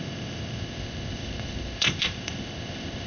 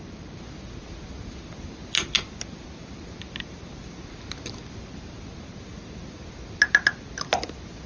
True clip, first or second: second